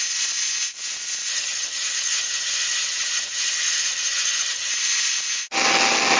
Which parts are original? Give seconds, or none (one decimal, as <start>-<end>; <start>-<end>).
0.0-1.3; 4.7-6.2